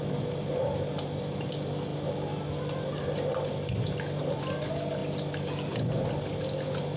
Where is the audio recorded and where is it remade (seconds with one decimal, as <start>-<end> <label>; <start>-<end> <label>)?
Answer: 0.0-7.0 recorded